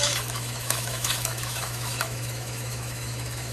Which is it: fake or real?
fake